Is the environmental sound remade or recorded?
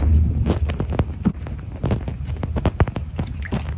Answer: recorded